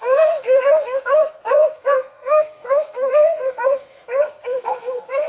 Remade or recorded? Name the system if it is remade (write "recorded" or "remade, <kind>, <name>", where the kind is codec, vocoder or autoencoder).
remade, codec, SNAC